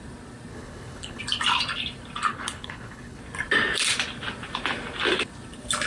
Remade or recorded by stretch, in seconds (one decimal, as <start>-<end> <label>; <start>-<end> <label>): 0.0-0.5 recorded; 0.5-1.2 remade; 1.2-2.3 recorded; 2.3-3.2 remade; 3.2-5.9 recorded